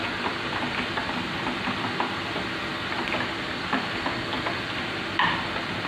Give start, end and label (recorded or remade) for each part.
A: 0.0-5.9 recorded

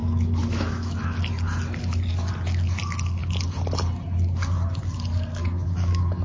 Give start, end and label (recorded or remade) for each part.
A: 0.0-1.2 remade; 1.2-5.4 recorded; 5.4-6.2 remade